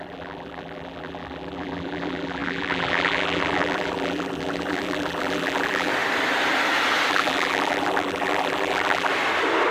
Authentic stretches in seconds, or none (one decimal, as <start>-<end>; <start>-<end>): 5.9-7.1; 9.1-9.7